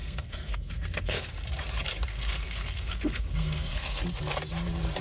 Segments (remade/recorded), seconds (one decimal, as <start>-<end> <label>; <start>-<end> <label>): 0.0-1.3 remade; 1.3-2.1 recorded; 2.1-4.0 remade; 4.0-5.0 recorded